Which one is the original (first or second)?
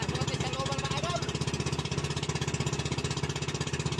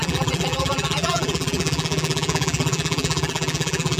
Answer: first